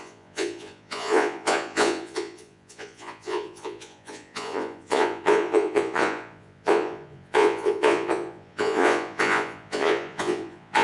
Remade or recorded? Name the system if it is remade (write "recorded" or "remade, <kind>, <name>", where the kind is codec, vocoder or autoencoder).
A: remade, vocoder, Vocos